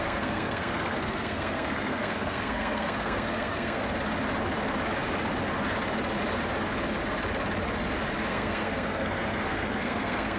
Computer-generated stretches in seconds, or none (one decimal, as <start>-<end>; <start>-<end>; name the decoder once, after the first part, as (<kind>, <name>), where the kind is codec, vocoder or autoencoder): 0.0-3.8 (codec, SNAC); 8.3-10.4